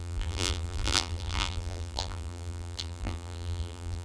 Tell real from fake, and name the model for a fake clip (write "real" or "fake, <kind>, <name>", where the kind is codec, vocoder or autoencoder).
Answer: fake, vocoder, BigVGAN v2